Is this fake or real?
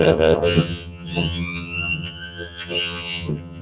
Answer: fake